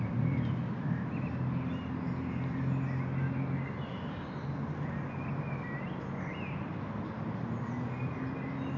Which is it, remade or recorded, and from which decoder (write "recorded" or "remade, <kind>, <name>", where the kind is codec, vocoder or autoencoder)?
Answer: recorded